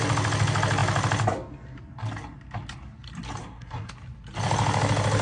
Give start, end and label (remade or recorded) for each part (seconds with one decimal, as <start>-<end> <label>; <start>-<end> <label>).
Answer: 0.0-3.4 recorded; 3.4-3.9 remade; 3.9-5.2 recorded